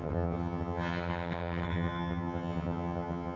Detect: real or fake fake